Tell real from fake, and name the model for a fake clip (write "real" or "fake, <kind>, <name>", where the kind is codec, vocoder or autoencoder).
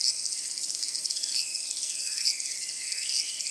fake, codec, SNAC